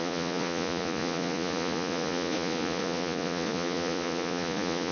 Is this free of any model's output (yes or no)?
no